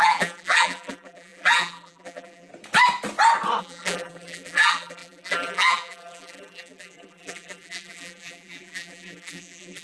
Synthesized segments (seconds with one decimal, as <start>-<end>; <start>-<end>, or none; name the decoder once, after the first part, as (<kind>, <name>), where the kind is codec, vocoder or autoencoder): 0.0-2.5 (vocoder, BigVGAN v2); 3.6-9.8